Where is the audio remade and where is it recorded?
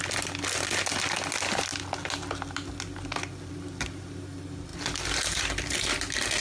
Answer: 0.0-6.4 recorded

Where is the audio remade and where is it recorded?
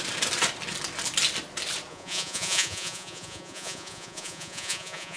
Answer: 0.0-1.9 recorded; 1.9-5.2 remade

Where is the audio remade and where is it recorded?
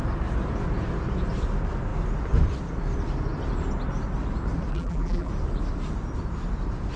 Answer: 0.0-4.7 recorded; 4.7-5.3 remade; 5.3-7.0 recorded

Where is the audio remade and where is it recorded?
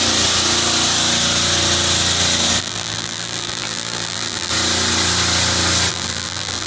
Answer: 0.0-2.6 recorded; 2.6-4.5 remade; 4.5-5.9 recorded; 5.9-6.7 remade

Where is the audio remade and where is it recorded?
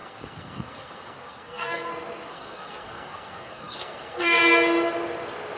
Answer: 0.0-1.9 remade; 1.9-2.3 recorded; 2.3-4.4 remade; 4.4-5.6 recorded